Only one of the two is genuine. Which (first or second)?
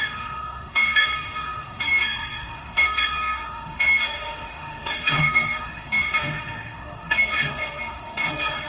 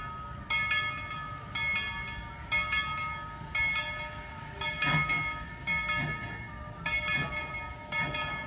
second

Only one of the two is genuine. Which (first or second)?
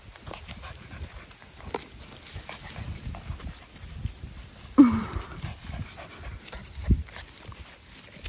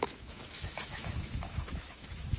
first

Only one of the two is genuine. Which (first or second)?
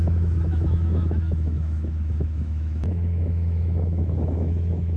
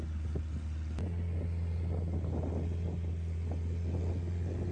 second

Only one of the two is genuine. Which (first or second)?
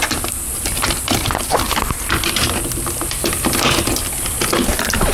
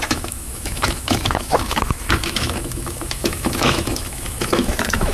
first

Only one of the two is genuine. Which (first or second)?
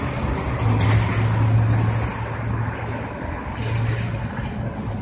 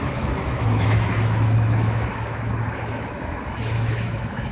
first